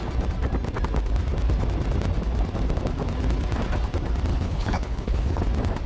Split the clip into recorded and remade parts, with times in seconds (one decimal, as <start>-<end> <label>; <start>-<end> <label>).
0.0-4.3 recorded; 4.3-5.4 remade; 5.4-5.9 recorded